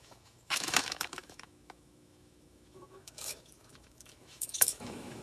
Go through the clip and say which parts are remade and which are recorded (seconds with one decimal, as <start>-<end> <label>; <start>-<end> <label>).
0.0-5.2 remade